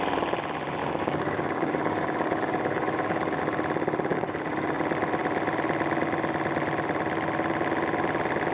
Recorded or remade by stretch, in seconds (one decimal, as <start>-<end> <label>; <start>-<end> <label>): 0.0-0.8 recorded; 0.8-3.4 remade; 3.4-4.1 recorded; 4.1-4.8 remade; 4.8-8.5 recorded